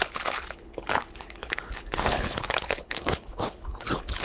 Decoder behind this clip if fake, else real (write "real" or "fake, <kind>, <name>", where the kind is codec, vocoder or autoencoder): fake, codec, HILCodec